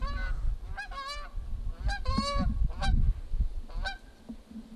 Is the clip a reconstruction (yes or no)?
no